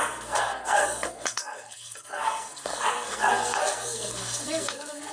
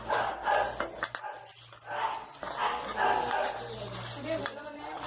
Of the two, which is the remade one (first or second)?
first